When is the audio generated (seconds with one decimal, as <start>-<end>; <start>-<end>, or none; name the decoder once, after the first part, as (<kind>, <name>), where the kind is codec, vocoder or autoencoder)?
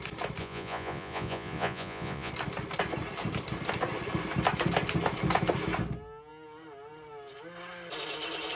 0.4-2.3 (vocoder, Vocos)